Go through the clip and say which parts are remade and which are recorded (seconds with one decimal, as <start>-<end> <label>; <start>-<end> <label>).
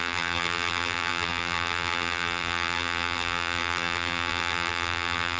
0.0-5.4 remade